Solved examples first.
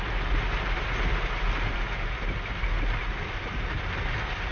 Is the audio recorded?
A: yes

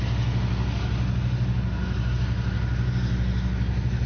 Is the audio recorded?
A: yes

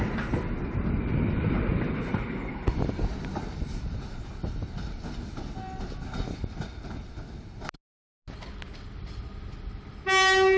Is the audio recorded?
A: yes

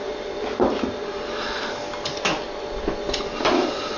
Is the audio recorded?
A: yes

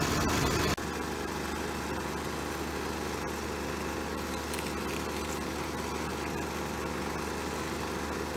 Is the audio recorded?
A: yes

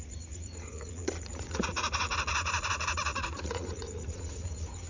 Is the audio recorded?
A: no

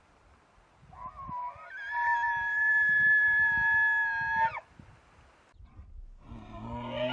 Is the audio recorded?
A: yes